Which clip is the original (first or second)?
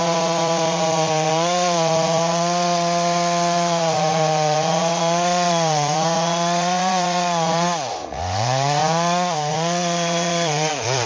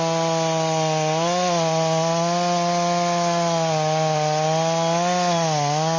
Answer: second